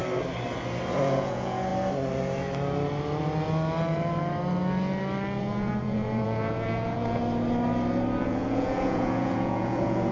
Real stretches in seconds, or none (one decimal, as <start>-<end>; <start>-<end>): 0.0-1.0; 1.7-5.4; 7.2-8.2